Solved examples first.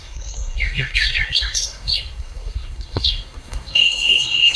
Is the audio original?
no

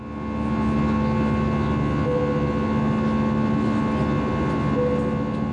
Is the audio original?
yes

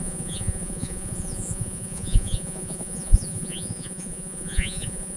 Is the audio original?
no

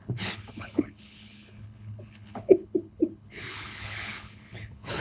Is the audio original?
no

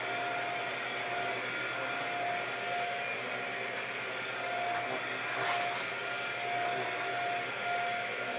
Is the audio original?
yes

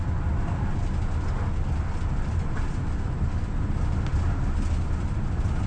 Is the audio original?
yes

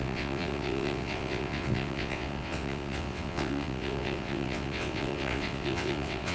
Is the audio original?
no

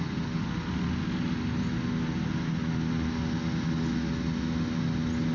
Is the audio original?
yes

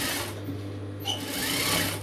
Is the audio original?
yes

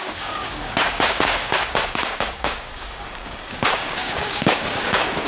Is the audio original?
no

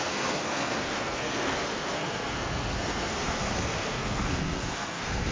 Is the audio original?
no